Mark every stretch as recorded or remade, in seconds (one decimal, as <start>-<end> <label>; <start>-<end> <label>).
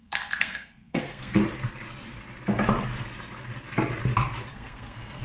0.0-1.4 remade; 1.4-4.5 recorded; 4.5-5.2 remade